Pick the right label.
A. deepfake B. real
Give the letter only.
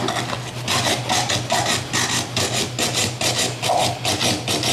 B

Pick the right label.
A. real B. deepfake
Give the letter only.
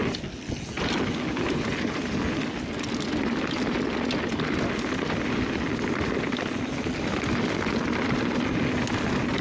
A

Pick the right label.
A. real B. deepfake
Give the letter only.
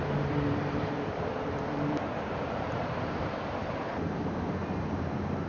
B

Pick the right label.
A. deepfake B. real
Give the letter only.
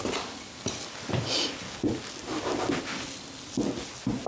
B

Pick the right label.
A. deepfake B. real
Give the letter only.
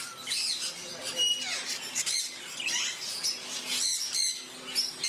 B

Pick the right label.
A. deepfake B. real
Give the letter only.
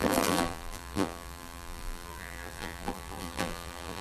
A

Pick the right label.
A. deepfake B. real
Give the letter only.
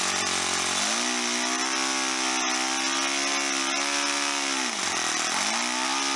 B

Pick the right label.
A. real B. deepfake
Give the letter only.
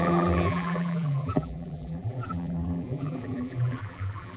B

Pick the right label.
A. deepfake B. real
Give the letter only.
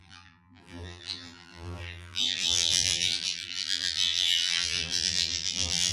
A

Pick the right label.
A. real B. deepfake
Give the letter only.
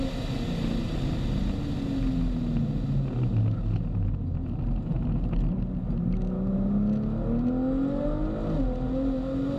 A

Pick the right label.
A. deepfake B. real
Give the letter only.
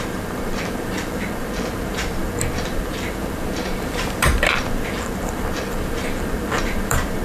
A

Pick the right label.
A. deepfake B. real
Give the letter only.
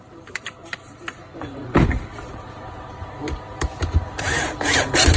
A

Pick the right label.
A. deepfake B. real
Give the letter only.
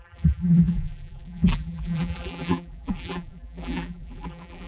A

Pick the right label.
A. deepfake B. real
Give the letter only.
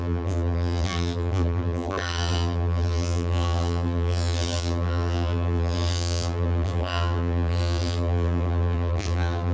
A